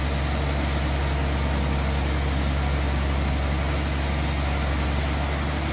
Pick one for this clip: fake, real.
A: real